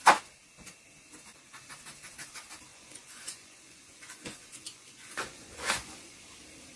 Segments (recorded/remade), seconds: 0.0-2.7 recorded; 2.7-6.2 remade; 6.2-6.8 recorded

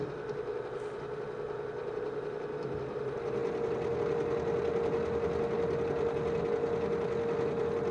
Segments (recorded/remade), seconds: 0.0-7.9 recorded

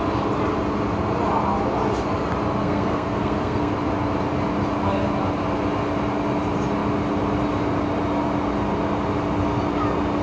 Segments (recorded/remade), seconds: 0.0-2.6 recorded; 2.6-3.7 remade; 3.7-10.2 recorded